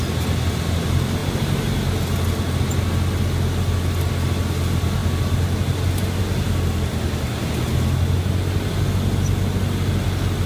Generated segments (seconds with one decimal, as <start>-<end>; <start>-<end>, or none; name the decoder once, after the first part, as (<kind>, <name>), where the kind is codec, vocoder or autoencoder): none